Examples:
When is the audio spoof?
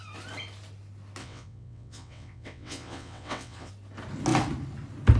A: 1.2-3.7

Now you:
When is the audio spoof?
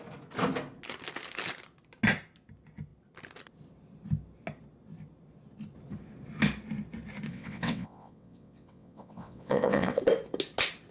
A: 7.3-10.0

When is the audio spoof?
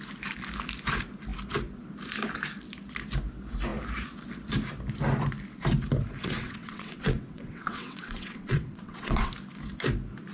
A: 6.2-9.3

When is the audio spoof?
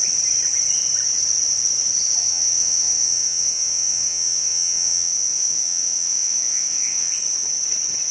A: 2.2-7.1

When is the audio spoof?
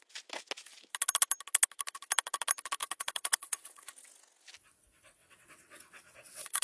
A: 2.8-3.9; 5.2-6.6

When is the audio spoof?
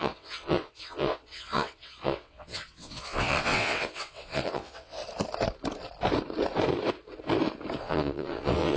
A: 0.0-5.0; 7.8-8.8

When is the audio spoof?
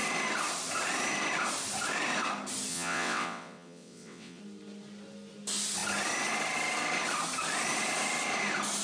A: 2.7-4.4